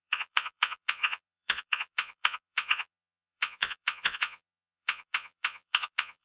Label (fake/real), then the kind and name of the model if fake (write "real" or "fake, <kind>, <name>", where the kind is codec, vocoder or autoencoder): fake, vocoder, Vocos